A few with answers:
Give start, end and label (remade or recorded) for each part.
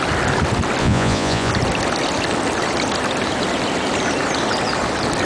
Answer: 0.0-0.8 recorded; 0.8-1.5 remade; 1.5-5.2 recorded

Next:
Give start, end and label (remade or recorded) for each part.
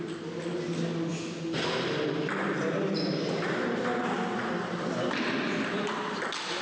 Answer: 0.0-6.6 recorded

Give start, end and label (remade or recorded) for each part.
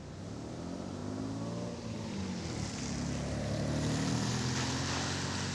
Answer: 0.0-5.5 recorded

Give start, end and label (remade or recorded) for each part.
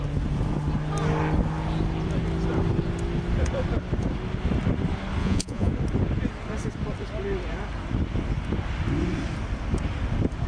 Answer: 0.0-5.2 recorded; 5.2-5.7 remade; 5.7-10.5 recorded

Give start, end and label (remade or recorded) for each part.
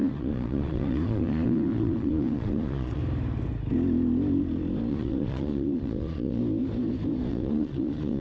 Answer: 0.0-3.0 remade; 3.0-4.9 recorded; 4.9-6.4 remade; 6.4-7.3 recorded; 7.3-8.2 remade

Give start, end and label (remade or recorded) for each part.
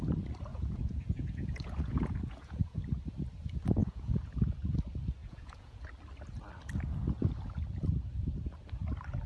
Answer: 0.0-0.5 recorded; 0.5-2.8 remade; 2.8-3.8 recorded; 3.8-4.3 remade; 4.3-5.2 recorded; 5.2-5.8 remade; 5.8-9.3 recorded